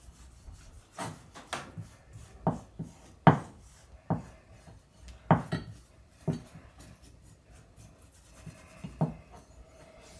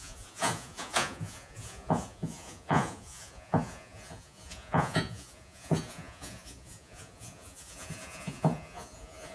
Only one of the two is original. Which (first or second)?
first